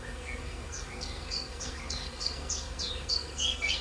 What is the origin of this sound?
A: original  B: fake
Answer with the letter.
B